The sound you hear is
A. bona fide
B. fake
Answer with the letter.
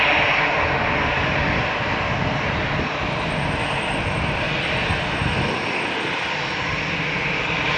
A